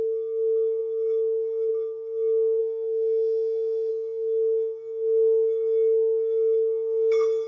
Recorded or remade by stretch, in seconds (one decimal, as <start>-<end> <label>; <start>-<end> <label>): 0.0-2.6 recorded; 2.6-3.9 remade; 3.9-7.5 recorded